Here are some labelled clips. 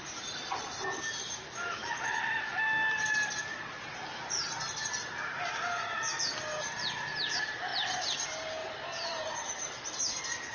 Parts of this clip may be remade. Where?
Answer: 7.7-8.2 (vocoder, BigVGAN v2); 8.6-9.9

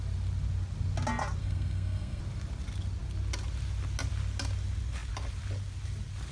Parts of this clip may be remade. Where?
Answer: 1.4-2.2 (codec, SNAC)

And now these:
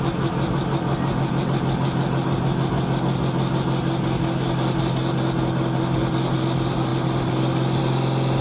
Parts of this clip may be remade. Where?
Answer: none